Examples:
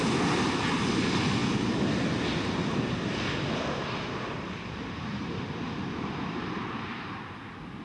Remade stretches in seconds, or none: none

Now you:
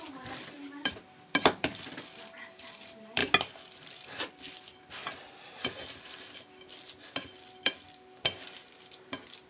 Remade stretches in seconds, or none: 0.0-3.2 (vocoder, BigVGAN v2); 4.0-9.5

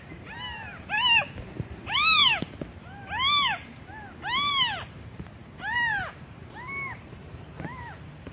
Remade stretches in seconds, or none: 0.0-2.2 (vocoder, BigVGAN v2); 3.7-8.3

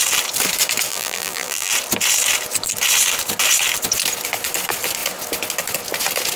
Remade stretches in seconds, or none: 0.9-1.7 (vocoder, BigVGAN v2)

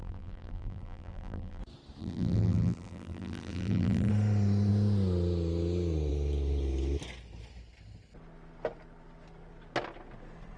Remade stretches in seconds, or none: 0.0-1.6 (vocoder, BigVGAN v2); 2.0-4.1

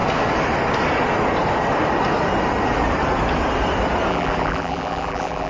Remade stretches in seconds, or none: 4.1-5.5 (vocoder, BigVGAN v2)

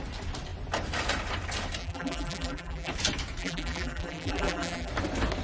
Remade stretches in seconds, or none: 1.8-2.9 (vocoder, BigVGAN v2); 3.4-4.9

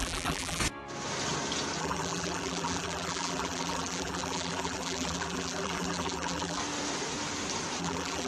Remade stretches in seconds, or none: 0.0-0.6 (vocoder, BigVGAN v2); 1.8-6.6; 7.8-8.3